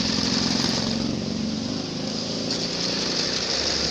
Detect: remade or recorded recorded